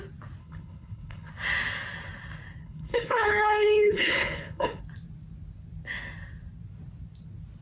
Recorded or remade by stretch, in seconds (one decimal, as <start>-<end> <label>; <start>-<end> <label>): 0.0-0.4 recorded; 0.4-1.3 remade; 1.3-2.6 recorded; 2.6-4.8 remade; 4.8-7.6 recorded